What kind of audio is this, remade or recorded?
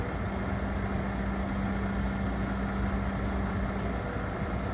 recorded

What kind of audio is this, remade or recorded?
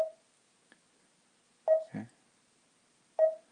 recorded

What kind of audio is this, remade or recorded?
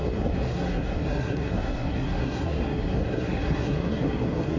remade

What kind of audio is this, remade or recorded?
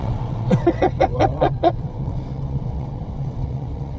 remade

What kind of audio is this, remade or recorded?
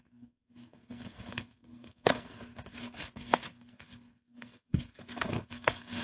remade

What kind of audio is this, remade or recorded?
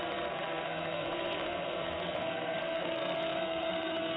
remade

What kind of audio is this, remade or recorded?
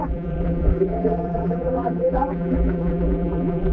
remade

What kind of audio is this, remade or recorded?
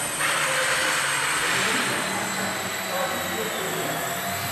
recorded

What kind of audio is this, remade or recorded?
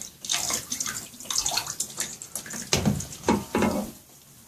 recorded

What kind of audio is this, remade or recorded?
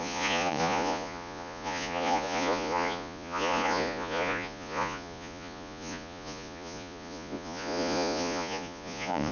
remade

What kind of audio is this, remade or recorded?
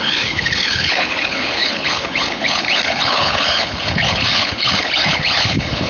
remade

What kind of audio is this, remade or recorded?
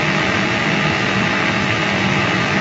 remade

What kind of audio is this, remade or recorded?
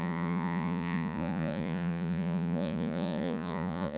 remade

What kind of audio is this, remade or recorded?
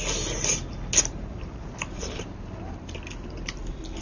recorded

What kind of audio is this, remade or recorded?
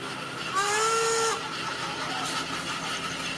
recorded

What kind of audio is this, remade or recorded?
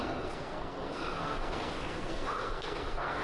remade